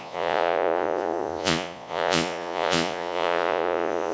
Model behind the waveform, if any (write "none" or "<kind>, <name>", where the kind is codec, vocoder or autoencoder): vocoder, Vocos